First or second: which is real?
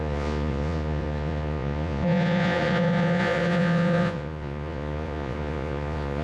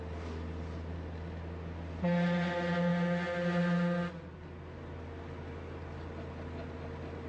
second